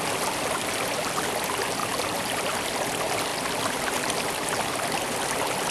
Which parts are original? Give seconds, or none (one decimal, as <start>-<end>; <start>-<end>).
0.0-1.8; 2.6-3.3; 4.3-5.7